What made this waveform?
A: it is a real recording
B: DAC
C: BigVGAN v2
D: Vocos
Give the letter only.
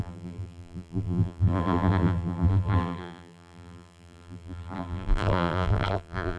C